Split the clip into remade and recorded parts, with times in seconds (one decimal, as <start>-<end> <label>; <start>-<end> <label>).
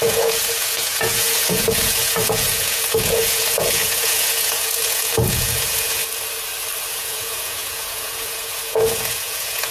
0.0-6.0 remade; 6.0-6.9 recorded; 6.9-9.7 remade